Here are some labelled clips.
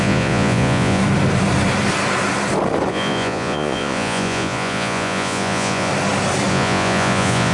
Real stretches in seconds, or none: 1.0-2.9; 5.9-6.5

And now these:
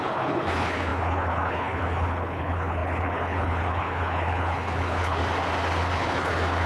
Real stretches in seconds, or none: 5.2-5.9

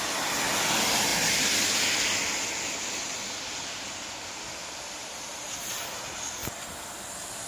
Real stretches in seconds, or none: 0.0-7.5

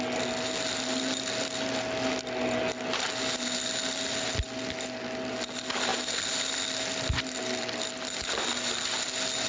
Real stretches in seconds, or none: 0.0-9.5

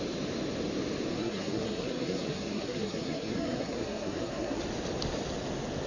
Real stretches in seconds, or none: 0.0-1.1; 4.6-5.9

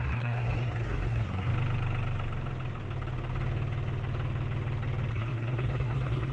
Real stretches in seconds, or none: 1.5-5.1

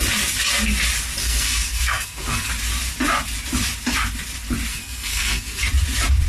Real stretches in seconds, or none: 0.0-1.2; 2.5-4.7; 5.6-6.3

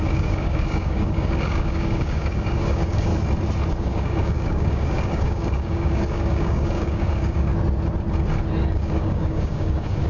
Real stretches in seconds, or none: 3.1-3.7; 7.5-8.6